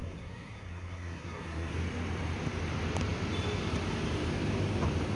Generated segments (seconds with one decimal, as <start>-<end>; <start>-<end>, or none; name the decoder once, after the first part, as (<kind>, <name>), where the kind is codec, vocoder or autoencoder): 0.0-1.7 (codec, SNAC)